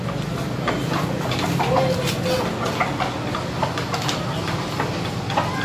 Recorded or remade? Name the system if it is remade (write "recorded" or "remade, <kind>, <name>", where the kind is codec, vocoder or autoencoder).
recorded